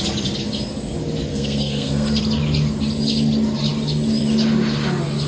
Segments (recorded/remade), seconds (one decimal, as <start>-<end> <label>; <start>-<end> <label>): 0.0-1.3 recorded; 1.3-2.2 remade; 2.2-5.3 recorded